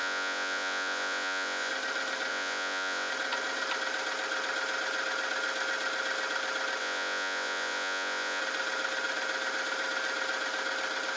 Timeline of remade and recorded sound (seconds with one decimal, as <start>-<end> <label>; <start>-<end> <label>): 0.0-1.7 remade; 1.7-2.3 recorded; 2.3-3.1 remade; 3.1-6.8 recorded; 6.8-8.4 remade; 8.4-11.2 recorded